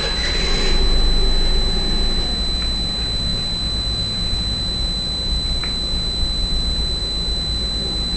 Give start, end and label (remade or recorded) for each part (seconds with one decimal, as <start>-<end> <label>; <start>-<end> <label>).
0.0-8.2 recorded